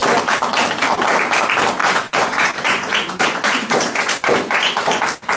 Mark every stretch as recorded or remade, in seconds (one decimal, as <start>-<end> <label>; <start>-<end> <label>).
0.0-1.8 recorded; 1.8-5.0 remade; 5.0-5.4 recorded